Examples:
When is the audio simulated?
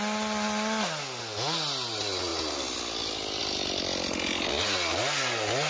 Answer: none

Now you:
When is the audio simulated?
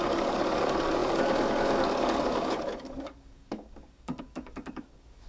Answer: 0.0-5.3 (codec, DAC)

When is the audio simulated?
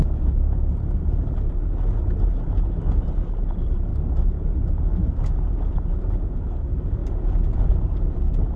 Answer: none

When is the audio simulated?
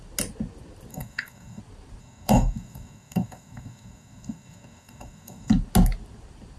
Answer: 0.9-1.6 (codec, DAC); 2.0-5.5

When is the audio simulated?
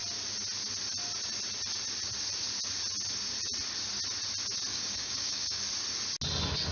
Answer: 4.7-5.6 (codec, DAC)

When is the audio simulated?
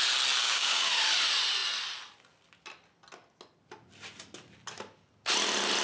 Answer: 0.4-0.9 (codec, DAC)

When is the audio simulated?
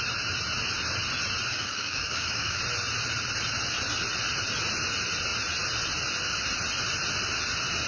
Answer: 1.5-2.6 (codec, DAC)